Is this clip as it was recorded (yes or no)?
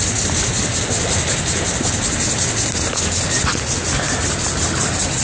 yes